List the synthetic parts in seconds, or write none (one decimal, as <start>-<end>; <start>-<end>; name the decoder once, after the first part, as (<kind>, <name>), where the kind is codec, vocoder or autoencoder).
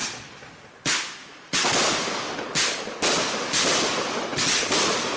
none